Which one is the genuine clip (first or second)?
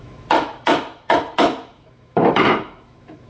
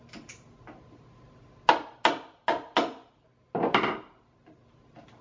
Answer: second